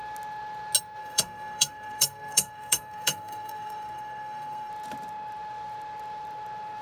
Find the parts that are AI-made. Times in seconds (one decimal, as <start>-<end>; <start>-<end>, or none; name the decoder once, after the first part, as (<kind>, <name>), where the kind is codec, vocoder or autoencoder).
1.0-4.7 (codec, SNAC)